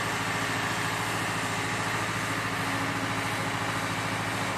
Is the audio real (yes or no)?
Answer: yes